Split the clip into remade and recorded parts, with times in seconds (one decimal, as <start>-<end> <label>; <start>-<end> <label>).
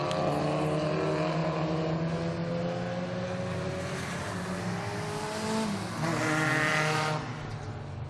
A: 0.0-8.1 recorded